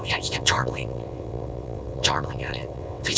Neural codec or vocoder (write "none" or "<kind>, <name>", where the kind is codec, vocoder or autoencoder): vocoder, WaveNeXt